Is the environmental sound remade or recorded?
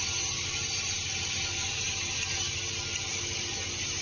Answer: recorded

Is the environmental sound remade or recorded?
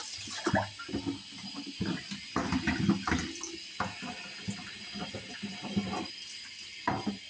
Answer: recorded